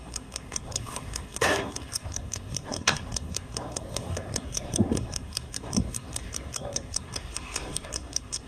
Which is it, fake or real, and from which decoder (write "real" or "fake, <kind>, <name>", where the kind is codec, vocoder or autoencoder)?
fake, codec, SNAC